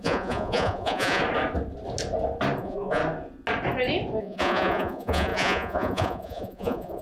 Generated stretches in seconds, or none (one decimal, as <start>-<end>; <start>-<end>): 0.0-1.2; 2.6-3.0; 4.2-7.0